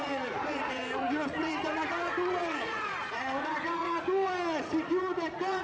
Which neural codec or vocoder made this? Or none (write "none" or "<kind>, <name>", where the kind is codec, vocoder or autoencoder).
vocoder, Vocos